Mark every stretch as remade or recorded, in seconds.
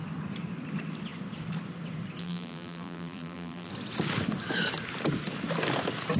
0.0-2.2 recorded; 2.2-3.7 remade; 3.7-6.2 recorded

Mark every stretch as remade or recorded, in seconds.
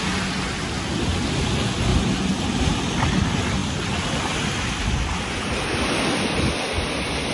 0.0-7.3 recorded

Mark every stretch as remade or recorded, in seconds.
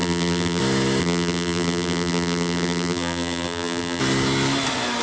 0.0-0.6 remade; 0.6-1.0 recorded; 1.0-4.0 remade; 4.0-5.0 recorded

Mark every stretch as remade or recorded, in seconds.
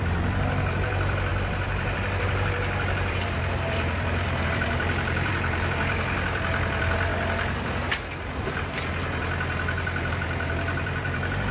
0.0-7.1 remade; 7.1-10.1 recorded; 10.1-11.5 remade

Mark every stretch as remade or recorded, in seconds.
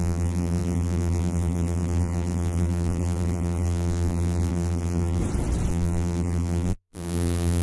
0.0-5.2 remade; 5.2-5.7 recorded; 5.7-7.6 remade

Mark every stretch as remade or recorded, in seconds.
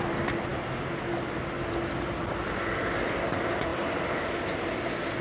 0.0-5.2 recorded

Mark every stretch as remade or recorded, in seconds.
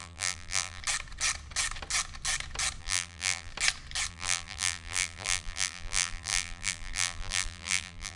0.0-0.8 remade; 0.8-2.8 recorded; 2.8-3.5 remade; 3.5-4.1 recorded; 4.1-8.2 remade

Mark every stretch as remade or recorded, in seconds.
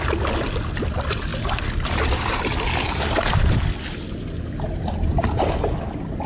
0.0-6.3 recorded